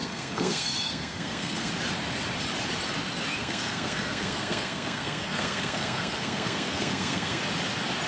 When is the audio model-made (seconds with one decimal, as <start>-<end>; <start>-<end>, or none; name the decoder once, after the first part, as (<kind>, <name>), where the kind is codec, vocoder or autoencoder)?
0.0-1.7 (codec, SNAC); 3.4-7.4